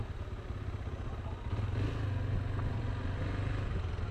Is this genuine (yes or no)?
yes